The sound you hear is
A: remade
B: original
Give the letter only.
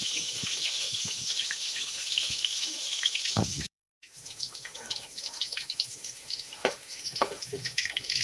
A